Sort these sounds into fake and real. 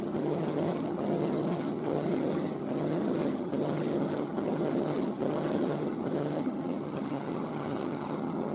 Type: fake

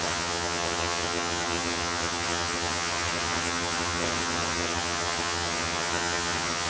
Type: fake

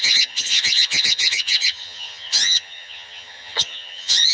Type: fake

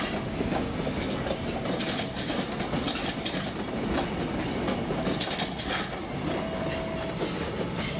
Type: real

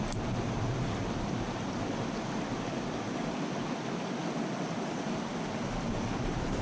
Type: real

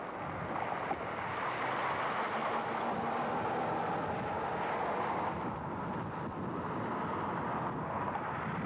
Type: real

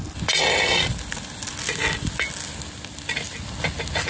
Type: real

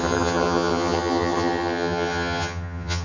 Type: fake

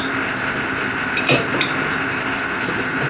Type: real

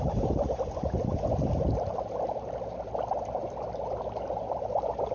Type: real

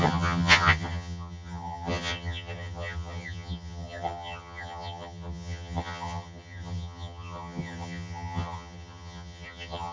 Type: fake